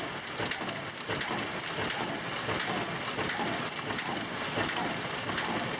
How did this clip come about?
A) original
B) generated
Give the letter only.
A